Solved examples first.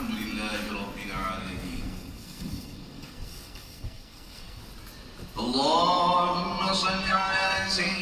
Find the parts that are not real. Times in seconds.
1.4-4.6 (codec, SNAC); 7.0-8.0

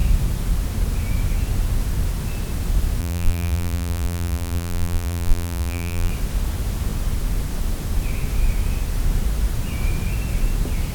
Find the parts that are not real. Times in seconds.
3.0-6.1 (vocoder, BigVGAN v2)

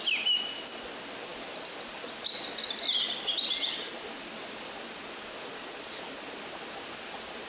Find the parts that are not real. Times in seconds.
none

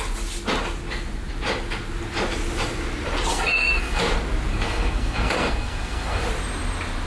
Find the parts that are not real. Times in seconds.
3.3-4.0 (codec, SNAC); 4.5-6.2

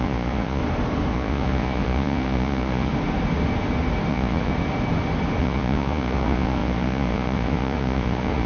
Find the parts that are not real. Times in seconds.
0.0-0.6 (vocoder, Vocos); 1.1-2.9; 4.1-4.5; 5.4-8.5